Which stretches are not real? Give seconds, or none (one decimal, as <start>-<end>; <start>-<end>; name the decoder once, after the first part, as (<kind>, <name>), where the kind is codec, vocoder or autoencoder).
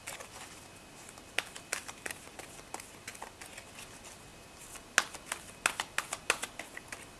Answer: 1.7-2.3 (vocoder, BigVGAN v2)